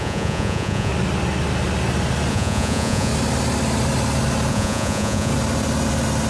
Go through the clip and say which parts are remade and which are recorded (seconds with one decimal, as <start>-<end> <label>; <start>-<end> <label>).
0.0-0.9 remade; 0.9-2.3 recorded; 2.3-3.1 remade; 3.1-4.5 recorded; 4.5-5.3 remade; 5.3-6.3 recorded